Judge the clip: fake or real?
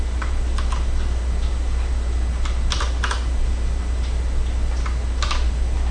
real